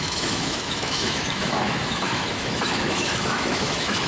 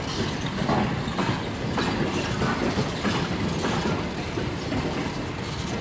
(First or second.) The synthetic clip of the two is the first